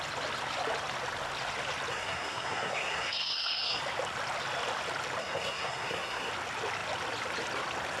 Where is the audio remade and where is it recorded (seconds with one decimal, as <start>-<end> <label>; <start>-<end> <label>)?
0.0-1.9 recorded; 1.9-3.8 remade; 3.8-5.2 recorded; 5.2-6.3 remade; 6.3-8.0 recorded